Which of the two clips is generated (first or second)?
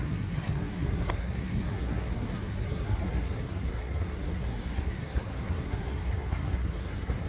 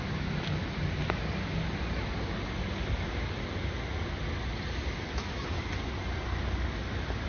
first